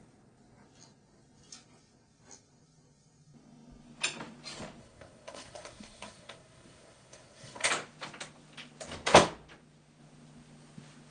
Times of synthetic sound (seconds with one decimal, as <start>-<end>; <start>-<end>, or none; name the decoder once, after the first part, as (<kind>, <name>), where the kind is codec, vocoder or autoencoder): 4.8-7.7 (codec, SNAC)